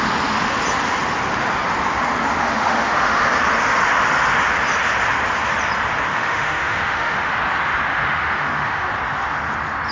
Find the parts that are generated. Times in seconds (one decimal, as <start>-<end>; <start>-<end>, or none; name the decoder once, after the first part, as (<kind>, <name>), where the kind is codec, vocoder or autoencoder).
2.5-3.2 (autoencoder, DAC-VAE); 6.1-7.3; 7.9-8.9